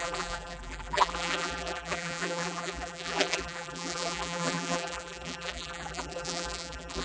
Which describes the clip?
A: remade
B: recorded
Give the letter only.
A